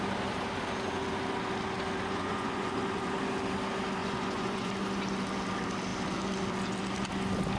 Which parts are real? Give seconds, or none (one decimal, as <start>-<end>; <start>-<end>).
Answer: 0.0-2.2; 2.7-4.0; 4.7-7.6